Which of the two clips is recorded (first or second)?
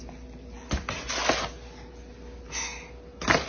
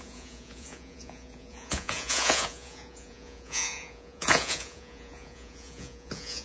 first